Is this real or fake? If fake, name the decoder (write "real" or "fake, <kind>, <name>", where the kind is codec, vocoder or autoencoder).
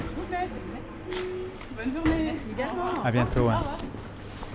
real